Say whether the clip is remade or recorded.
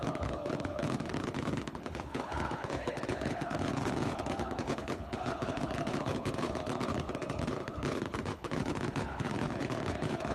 remade